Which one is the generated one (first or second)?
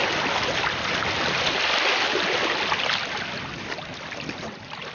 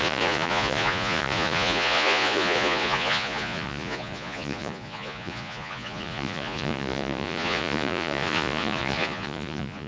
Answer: second